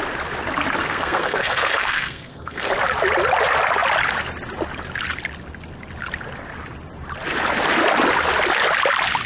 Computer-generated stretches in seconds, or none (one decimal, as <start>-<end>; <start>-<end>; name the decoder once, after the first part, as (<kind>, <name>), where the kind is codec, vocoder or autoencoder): 0.8-2.7 (codec, SNAC)

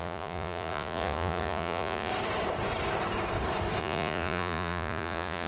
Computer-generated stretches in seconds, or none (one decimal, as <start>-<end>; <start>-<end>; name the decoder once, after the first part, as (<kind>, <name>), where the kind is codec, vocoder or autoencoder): 0.0-2.1 (vocoder, Vocos); 3.8-5.5

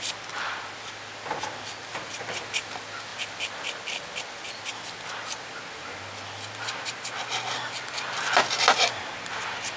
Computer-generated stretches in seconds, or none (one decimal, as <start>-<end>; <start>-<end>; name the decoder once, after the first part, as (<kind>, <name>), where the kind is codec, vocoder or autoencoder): none

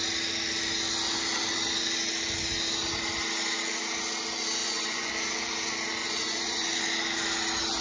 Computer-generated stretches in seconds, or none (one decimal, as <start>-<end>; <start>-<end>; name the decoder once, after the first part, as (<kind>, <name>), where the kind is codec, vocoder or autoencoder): 4.6-5.1 (vocoder, Vocos); 6.0-6.7

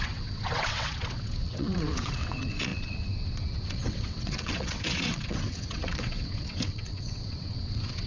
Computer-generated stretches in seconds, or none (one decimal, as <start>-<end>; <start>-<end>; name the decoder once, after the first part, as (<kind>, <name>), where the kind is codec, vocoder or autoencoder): 0.0-8.1 (vocoder, WaveNeXt)

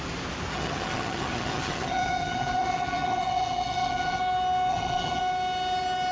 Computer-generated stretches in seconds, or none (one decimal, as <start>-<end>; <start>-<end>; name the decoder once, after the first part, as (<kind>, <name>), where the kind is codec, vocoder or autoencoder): 0.5-4.2 (vocoder, HiFi-GAN); 4.7-5.2

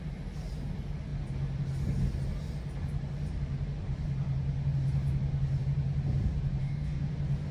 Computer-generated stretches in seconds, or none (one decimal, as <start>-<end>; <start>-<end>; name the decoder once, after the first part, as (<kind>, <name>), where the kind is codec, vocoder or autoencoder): 6.6-7.1 (codec, DAC)

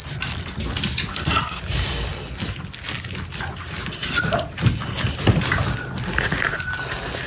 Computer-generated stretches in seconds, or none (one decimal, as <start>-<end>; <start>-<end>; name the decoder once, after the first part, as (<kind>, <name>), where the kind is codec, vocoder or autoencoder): 1.1-1.6 (codec, SNAC)